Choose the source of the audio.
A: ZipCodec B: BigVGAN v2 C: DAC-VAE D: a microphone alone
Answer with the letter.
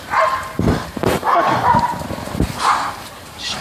B